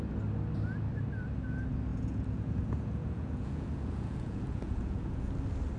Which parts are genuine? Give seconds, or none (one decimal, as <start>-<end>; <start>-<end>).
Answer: 0.0-1.9; 5.3-5.8